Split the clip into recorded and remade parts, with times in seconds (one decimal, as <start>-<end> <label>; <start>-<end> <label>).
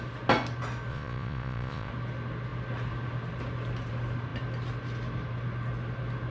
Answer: 0.0-0.9 recorded; 0.9-1.9 remade; 1.9-6.3 recorded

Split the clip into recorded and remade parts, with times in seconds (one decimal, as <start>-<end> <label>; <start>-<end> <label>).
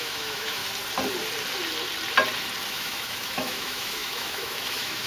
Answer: 0.0-0.6 remade; 0.6-2.7 recorded; 2.7-5.1 remade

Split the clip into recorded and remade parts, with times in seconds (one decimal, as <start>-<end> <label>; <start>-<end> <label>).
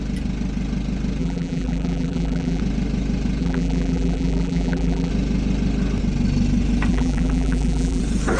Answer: 0.0-1.2 recorded; 1.2-2.6 remade; 2.6-3.4 recorded; 3.4-5.1 remade; 5.1-6.9 recorded; 6.9-8.0 remade; 8.0-8.4 recorded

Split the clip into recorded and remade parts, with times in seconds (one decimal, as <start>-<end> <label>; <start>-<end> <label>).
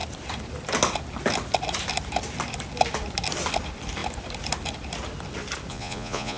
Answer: 0.0-5.7 recorded; 5.7-6.4 remade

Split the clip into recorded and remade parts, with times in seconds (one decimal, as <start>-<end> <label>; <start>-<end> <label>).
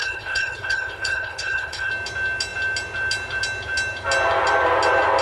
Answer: 0.0-1.9 remade; 1.9-5.2 recorded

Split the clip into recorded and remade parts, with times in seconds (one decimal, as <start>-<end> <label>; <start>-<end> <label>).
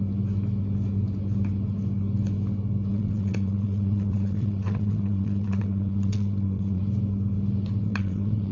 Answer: 0.0-2.9 recorded; 2.9-6.8 remade; 6.8-7.8 recorded; 7.8-8.5 remade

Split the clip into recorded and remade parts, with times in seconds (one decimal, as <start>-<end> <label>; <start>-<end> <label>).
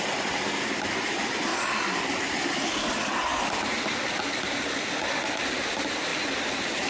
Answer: 0.0-6.1 recorded; 6.1-6.9 remade